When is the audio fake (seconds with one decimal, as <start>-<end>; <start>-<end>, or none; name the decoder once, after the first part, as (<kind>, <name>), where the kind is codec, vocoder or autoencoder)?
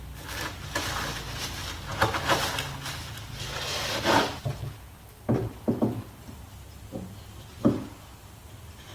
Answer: none